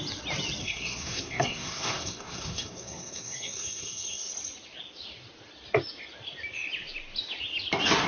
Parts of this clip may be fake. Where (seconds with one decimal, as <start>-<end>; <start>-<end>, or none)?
0.6-4.3